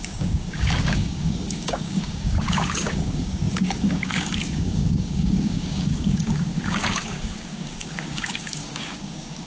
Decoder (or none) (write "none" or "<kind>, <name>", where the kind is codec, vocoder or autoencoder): codec, DAC